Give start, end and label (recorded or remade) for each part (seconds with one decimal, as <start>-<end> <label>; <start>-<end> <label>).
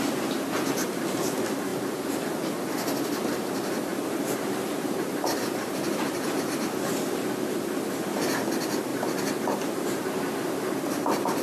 0.0-3.9 recorded; 3.9-7.5 remade; 7.5-8.9 recorded; 8.9-11.4 remade